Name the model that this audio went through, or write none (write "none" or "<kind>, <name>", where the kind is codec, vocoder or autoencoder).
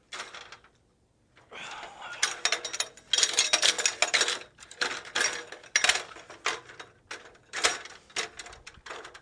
none